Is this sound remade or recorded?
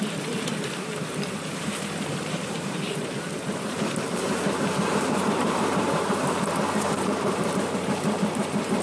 remade